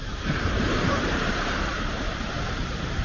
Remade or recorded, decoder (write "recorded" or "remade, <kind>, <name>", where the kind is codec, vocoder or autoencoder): remade, vocoder, BigVGAN v2